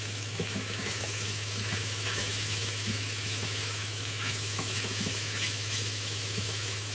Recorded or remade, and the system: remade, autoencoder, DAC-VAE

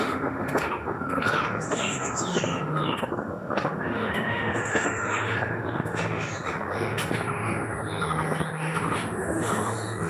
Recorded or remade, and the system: remade, autoencoder, DAC-VAE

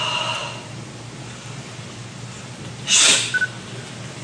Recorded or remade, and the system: recorded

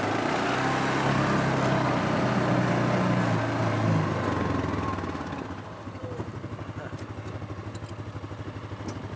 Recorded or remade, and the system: recorded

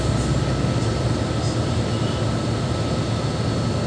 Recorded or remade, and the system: recorded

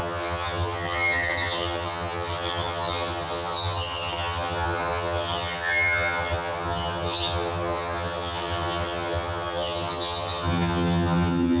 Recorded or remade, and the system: remade, vocoder, HiFi-GAN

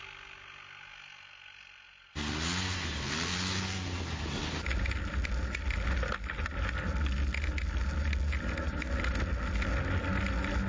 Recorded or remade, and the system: recorded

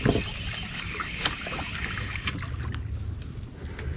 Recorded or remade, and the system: recorded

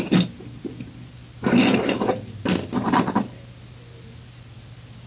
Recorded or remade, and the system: recorded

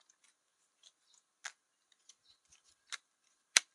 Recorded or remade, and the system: recorded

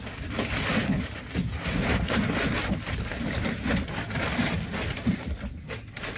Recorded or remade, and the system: recorded